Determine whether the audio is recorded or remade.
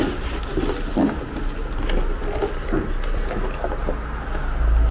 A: recorded